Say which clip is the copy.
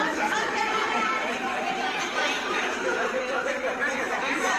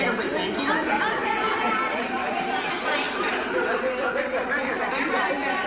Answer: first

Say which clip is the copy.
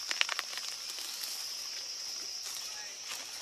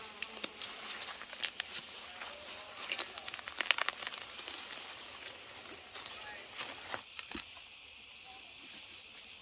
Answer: second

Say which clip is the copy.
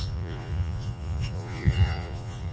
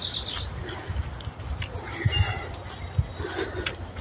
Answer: first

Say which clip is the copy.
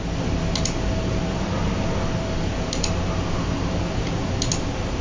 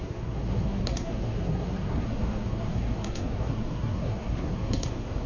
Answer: second